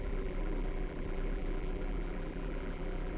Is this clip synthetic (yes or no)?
yes